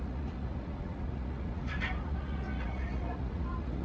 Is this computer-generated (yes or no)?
yes